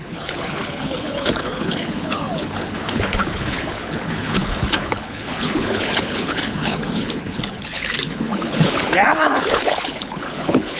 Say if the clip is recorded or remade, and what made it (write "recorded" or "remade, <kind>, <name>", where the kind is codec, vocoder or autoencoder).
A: remade, codec, HILCodec